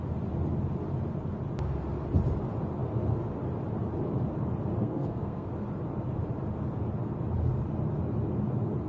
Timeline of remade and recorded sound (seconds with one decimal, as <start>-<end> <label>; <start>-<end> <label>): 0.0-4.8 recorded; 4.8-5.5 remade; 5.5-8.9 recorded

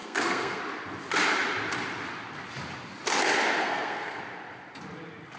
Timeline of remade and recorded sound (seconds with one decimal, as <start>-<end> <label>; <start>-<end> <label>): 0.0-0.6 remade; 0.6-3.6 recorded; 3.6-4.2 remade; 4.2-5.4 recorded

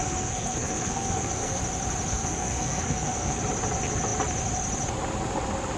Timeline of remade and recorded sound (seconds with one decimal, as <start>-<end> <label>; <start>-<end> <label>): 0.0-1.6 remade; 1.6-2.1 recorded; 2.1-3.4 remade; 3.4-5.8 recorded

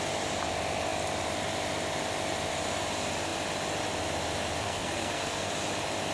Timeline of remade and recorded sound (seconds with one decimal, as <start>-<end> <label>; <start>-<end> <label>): 0.0-4.6 recorded; 4.6-5.5 remade; 5.5-6.1 recorded

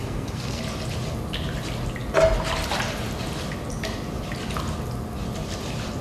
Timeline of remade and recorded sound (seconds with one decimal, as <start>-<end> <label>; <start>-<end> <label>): 0.0-0.6 remade; 0.6-6.0 recorded

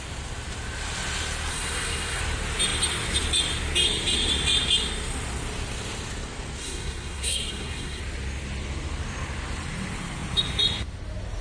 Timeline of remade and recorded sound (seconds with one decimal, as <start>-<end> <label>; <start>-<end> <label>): 0.0-1.5 recorded; 1.5-2.2 remade; 2.2-6.6 recorded; 6.6-8.0 remade; 8.0-11.4 recorded